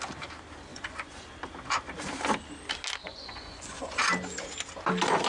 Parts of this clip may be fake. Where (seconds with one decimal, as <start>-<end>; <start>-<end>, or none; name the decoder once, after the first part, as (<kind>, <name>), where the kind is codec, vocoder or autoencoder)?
0.7-1.2 (vocoder, Vocos); 3.0-4.0